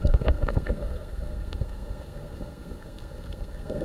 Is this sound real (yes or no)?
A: no